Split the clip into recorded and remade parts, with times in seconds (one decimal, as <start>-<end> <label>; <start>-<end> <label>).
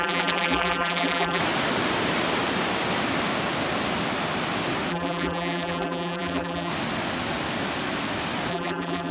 0.0-1.4 remade; 1.4-4.9 recorded; 4.9-6.7 remade; 6.7-8.5 recorded; 8.5-9.1 remade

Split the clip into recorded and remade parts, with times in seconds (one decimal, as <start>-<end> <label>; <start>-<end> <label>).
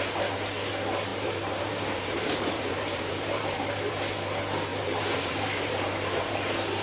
0.0-1.1 recorded; 1.1-3.9 remade; 3.9-4.7 recorded; 4.7-6.3 remade; 6.3-6.8 recorded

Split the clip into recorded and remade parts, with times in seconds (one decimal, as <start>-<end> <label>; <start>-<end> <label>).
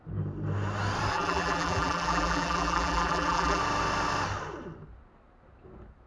0.0-1.1 recorded; 1.1-3.6 remade; 3.6-6.1 recorded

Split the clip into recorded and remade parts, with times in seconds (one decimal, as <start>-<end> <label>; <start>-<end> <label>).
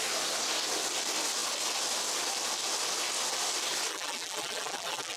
0.0-3.9 recorded; 3.9-5.2 remade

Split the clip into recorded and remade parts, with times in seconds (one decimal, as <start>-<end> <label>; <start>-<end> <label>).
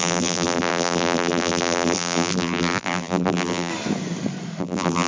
0.0-3.7 remade; 3.7-4.6 recorded; 4.6-5.1 remade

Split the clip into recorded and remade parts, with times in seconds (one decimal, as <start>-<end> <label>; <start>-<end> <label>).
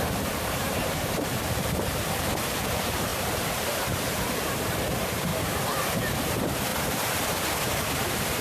0.0-5.3 remade; 5.3-6.3 recorded; 6.3-6.7 remade; 6.7-7.5 recorded; 7.5-8.4 remade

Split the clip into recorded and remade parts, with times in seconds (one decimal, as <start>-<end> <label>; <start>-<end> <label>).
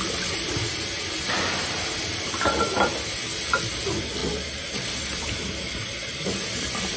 0.0-2.1 remade; 2.1-3.7 recorded; 3.7-7.0 remade